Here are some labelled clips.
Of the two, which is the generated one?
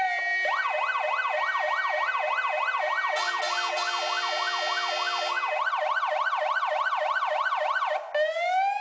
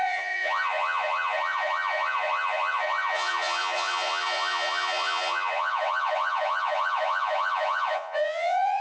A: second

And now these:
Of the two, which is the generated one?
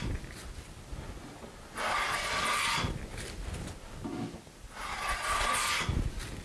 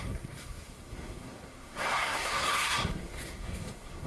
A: second